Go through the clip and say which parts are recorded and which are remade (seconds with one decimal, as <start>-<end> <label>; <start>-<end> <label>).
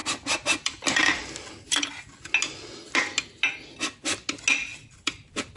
0.0-1.9 remade; 1.9-4.7 recorded; 4.7-5.6 remade